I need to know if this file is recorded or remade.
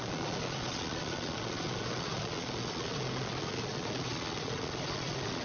remade